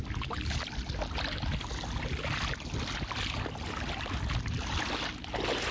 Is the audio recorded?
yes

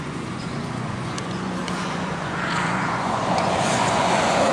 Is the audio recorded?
no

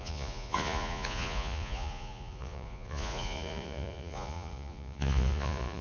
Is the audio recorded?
no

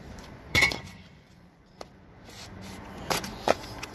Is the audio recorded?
no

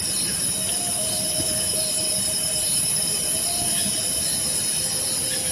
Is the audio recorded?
yes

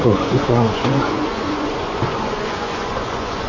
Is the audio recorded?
no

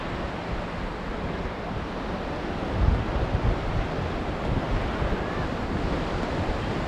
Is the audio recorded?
yes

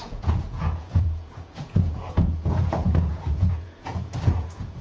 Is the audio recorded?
no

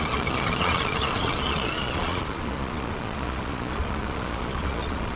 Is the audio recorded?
no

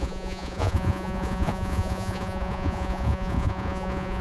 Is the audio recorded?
no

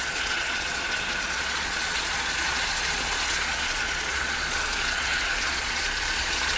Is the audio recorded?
no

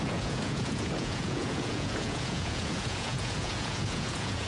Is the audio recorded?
no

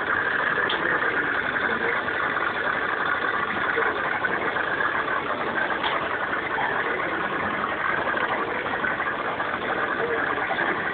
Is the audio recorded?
yes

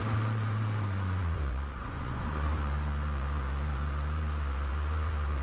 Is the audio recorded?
no